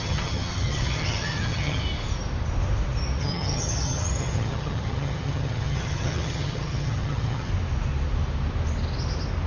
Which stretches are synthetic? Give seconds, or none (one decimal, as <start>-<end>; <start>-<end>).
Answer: 0.0-1.8; 3.2-7.5